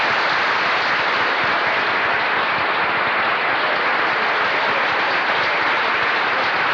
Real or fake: real